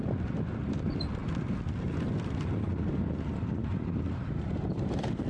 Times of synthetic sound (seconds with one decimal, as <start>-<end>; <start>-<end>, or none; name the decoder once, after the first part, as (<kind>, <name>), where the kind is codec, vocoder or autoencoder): 3.7-5.3 (vocoder, BigVGAN v2)